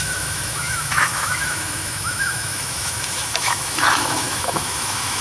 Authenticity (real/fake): fake